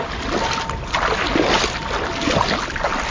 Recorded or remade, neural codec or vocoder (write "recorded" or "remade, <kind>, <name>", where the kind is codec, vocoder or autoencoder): recorded